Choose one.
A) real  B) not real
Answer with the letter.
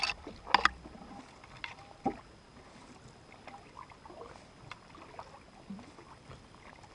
A